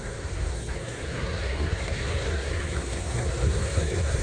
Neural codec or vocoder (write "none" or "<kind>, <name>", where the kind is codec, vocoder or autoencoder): codec, SNAC